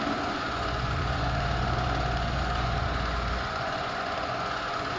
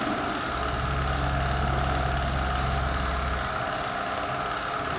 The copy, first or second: first